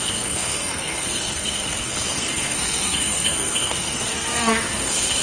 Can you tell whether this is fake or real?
fake